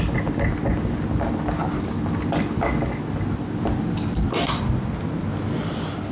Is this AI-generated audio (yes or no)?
no